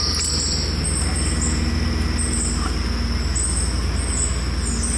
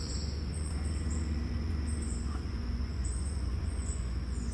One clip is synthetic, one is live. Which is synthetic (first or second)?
second